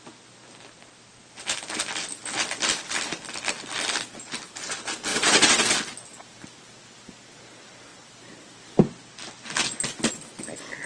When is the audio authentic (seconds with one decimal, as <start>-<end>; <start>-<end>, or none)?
0.0-5.1; 5.7-10.9